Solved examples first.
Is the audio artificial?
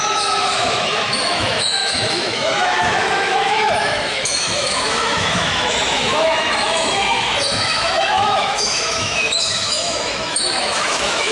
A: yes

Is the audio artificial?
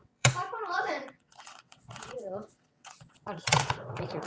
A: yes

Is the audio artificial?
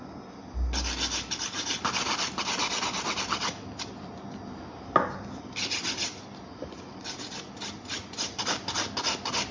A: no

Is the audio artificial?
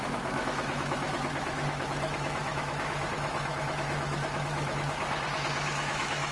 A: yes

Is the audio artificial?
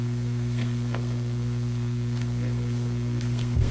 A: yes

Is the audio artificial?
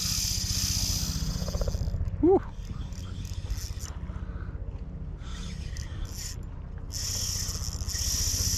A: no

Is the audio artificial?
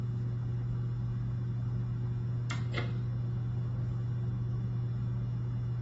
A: no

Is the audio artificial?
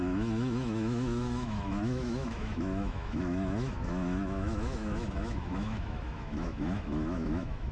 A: yes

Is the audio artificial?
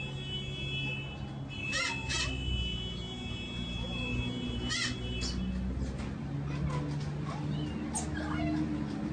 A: no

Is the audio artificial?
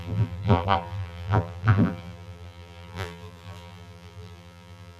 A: yes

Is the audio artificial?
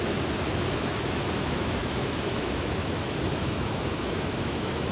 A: yes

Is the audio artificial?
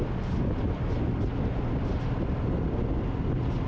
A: no